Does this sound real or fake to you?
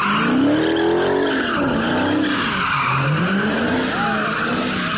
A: real